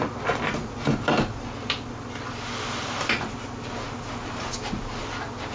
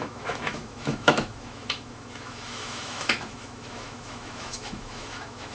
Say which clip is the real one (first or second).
first